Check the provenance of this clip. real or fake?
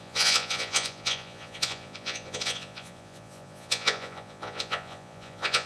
fake